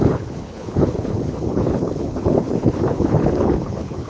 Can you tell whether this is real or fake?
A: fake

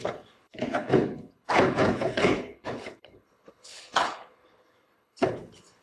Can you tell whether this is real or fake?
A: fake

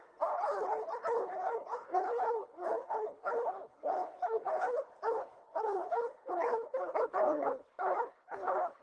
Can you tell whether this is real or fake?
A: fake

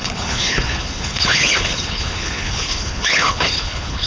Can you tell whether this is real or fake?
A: fake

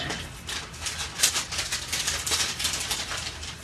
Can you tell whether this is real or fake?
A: real